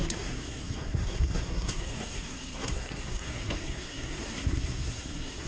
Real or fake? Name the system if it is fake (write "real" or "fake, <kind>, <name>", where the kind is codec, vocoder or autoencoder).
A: fake, codec, SNAC